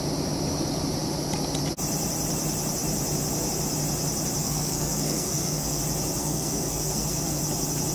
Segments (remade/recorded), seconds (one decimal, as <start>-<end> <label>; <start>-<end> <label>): 0.0-4.4 recorded; 4.4-5.8 remade; 5.8-6.2 recorded; 6.2-7.4 remade; 7.4-7.9 recorded